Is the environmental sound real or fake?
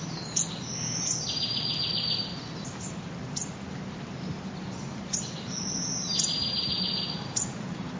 real